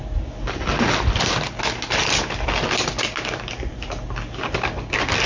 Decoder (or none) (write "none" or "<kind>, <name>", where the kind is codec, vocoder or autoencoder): none